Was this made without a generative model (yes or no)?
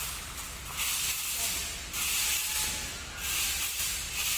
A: yes